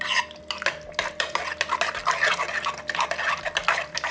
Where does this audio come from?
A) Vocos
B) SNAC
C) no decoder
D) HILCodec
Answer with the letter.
C